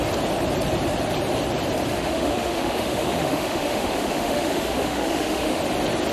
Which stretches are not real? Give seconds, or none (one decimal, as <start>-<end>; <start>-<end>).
1.9-5.6